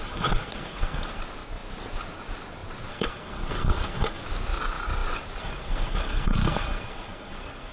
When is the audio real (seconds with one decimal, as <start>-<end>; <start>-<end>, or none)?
1.2-2.9; 4.2-5.4